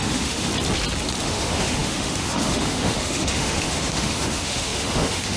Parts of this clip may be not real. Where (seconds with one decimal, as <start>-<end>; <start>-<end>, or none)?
0.0-0.5; 1.2-5.4